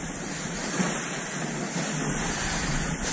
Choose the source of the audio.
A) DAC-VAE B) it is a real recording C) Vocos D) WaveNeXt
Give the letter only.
B